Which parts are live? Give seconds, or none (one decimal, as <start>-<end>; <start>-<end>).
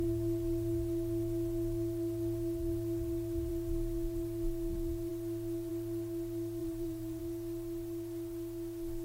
0.0-6.6; 7.2-9.0